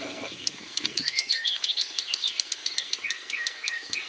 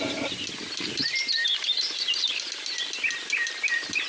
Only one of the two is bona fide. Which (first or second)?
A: second